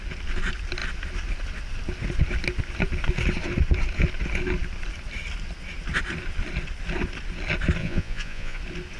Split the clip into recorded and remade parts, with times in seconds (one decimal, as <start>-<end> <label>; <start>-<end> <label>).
0.0-7.8 recorded; 7.8-8.6 remade; 8.6-9.0 recorded